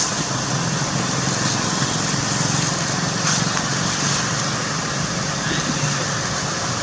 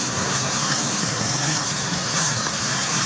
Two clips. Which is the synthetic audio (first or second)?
second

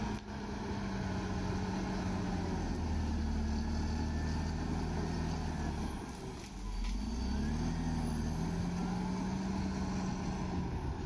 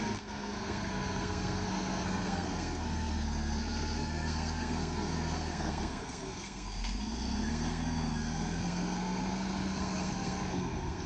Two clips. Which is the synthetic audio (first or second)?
second